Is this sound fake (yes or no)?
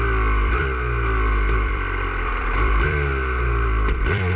yes